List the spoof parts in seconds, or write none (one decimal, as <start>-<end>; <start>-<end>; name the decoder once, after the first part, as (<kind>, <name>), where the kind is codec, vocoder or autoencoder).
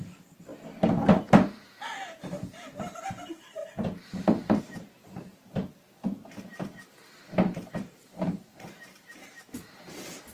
0.0-0.5 (vocoder, BigVGAN v2); 1.2-3.6; 4.6-5.3; 7.7-10.3